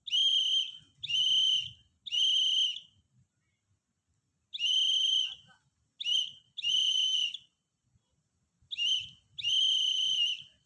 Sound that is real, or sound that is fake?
real